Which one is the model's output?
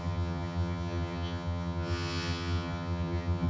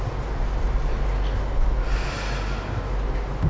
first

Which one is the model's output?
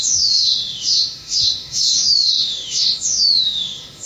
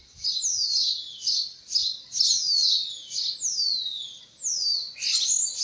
first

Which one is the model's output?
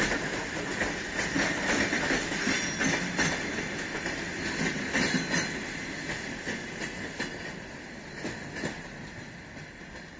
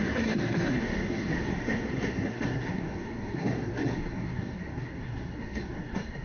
second